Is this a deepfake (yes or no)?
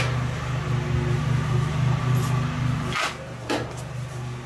no